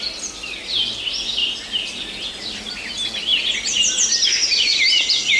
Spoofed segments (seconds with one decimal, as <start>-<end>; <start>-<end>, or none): 1.4-2.0